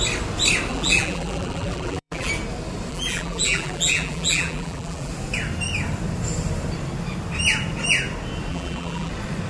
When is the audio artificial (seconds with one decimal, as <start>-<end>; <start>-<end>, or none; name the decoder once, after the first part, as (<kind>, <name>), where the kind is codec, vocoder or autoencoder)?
0.7-2.3 (vocoder, BigVGAN v2); 2.9-5.1; 8.5-9.1